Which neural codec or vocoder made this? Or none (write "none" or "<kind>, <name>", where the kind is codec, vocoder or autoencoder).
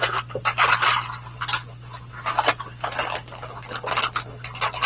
none